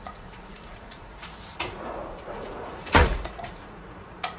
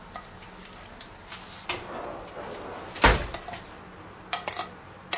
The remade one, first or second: first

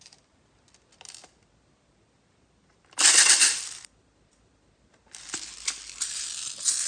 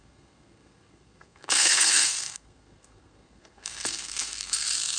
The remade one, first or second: second